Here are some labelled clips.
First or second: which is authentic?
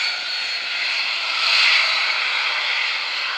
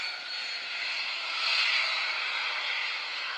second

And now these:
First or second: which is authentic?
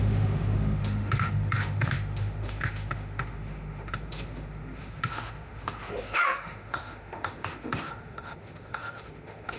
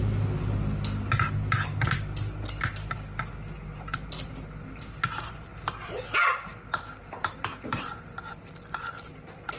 second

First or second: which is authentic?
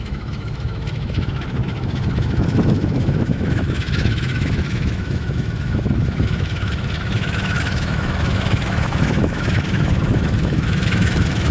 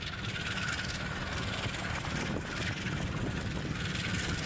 second